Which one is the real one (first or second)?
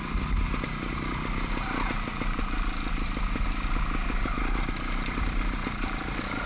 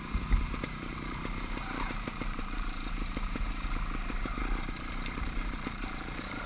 first